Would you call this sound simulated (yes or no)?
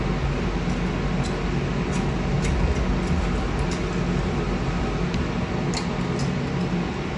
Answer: no